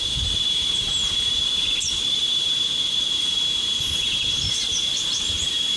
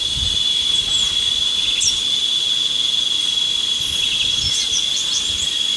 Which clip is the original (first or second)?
second